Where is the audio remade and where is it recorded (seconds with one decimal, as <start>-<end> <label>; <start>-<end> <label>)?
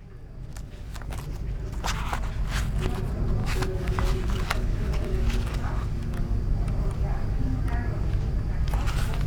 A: 0.0-0.5 recorded; 0.5-1.2 remade; 1.2-3.4 recorded; 3.4-6.4 remade; 6.4-7.0 recorded; 7.0-7.6 remade; 7.6-9.3 recorded